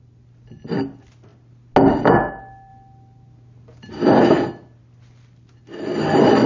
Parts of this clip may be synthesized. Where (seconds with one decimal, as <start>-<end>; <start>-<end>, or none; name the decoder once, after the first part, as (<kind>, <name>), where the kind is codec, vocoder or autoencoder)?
none

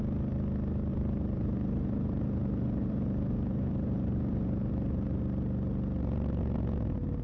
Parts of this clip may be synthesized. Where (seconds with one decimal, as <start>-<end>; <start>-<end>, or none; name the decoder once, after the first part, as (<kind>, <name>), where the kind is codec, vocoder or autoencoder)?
0.9-5.2 (vocoder, BigVGAN v2)

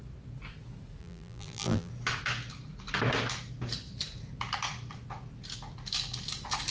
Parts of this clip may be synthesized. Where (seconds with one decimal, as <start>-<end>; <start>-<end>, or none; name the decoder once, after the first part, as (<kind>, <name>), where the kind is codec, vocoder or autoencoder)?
1.0-1.9 (vocoder, BigVGAN v2)

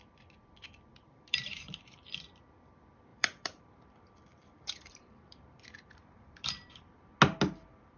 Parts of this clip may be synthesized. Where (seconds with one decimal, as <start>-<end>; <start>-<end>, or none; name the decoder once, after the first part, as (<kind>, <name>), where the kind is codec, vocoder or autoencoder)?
0.9-2.1 (vocoder, BigVGAN v2); 3.1-3.8; 4.3-6.9